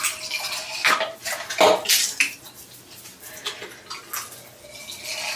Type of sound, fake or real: real